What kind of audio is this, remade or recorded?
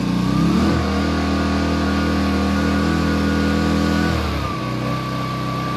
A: recorded